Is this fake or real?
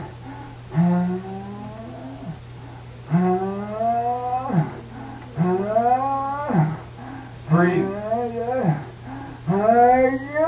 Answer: real